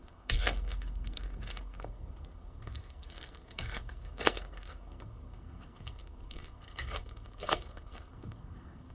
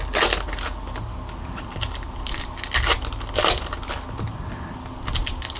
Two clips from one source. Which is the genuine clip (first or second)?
second